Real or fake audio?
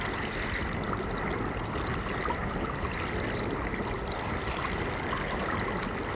real